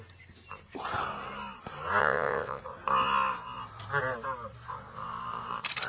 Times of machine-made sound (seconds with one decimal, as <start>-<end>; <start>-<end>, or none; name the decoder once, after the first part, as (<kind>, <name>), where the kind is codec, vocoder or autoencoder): 2.0-2.6 (vocoder, WaveNeXt)